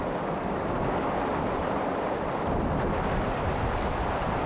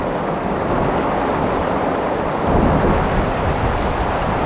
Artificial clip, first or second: first